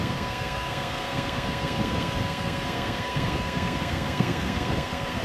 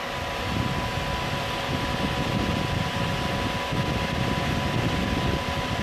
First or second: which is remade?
first